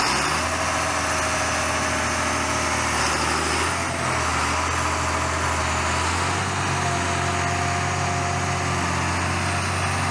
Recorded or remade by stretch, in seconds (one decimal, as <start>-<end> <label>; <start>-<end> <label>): 0.0-10.1 recorded